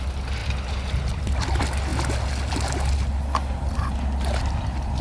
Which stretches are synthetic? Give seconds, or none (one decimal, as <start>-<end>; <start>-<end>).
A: none